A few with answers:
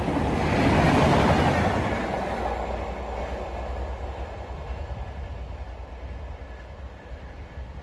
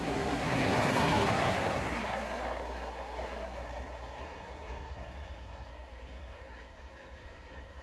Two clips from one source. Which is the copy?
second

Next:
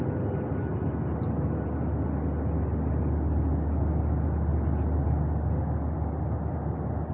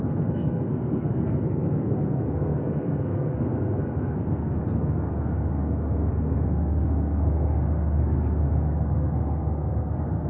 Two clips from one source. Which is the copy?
second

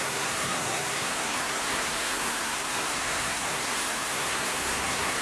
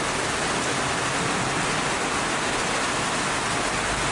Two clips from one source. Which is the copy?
first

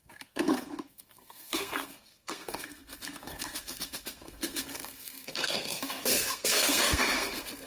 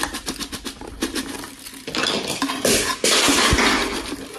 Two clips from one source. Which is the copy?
first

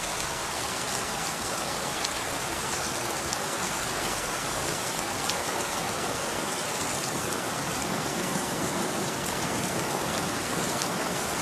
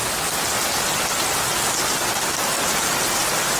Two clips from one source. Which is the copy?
first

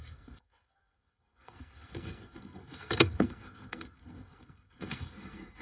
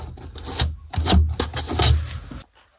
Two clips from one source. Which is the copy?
first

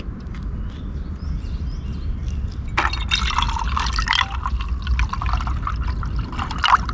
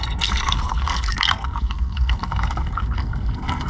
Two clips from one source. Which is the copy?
second